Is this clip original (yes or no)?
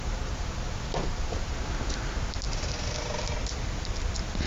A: yes